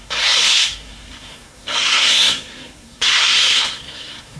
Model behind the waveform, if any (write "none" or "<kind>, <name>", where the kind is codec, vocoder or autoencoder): codec, SNAC